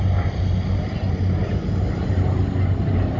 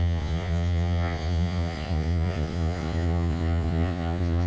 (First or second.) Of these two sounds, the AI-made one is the second